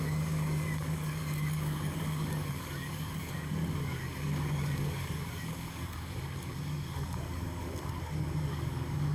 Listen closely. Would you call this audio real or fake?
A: fake